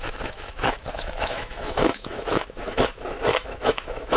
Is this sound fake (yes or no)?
yes